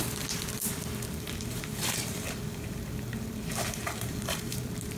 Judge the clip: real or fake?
fake